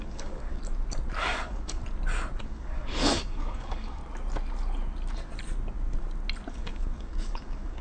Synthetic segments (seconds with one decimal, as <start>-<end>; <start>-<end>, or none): 0.0-0.6; 1.2-1.8; 2.4-4.0; 6.5-7.8